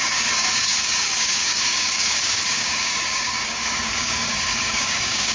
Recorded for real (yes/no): no